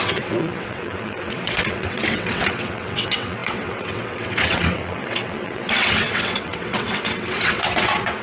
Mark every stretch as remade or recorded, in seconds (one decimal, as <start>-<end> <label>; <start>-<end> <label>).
0.0-8.2 remade